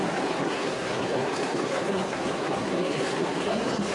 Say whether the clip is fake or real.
fake